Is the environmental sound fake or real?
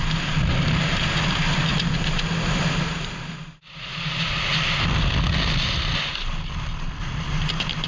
real